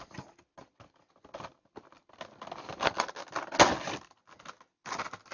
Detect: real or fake real